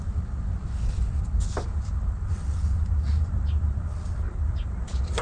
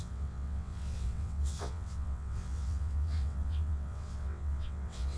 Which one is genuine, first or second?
first